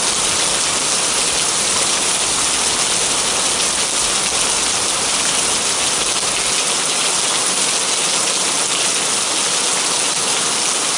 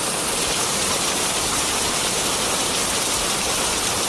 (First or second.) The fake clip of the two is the second